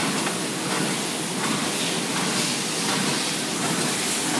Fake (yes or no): no